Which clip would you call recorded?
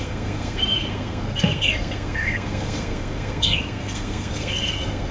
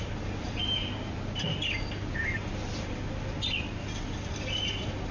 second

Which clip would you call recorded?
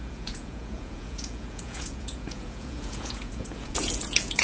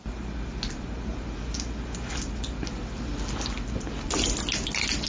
second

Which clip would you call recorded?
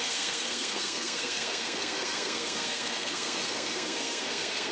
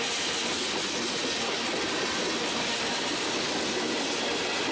second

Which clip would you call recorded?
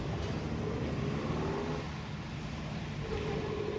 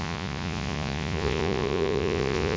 first